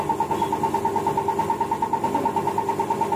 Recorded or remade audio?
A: recorded